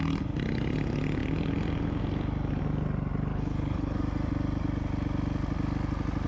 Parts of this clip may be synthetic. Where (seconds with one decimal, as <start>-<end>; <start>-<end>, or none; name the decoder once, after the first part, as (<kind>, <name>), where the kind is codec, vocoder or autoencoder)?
3.3-4.0 (codec, HILCodec)